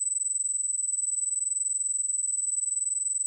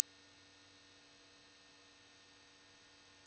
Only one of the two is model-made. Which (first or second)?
first